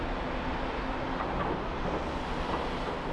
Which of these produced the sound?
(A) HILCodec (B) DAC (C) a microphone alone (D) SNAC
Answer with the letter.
C